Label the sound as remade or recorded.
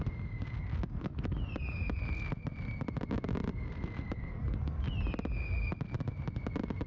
recorded